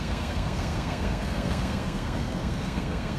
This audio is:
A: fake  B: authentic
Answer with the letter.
A